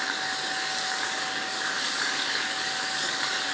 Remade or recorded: remade